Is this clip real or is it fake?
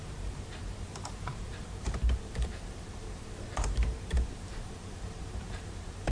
fake